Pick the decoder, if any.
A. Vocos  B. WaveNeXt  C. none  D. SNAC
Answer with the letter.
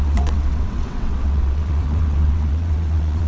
B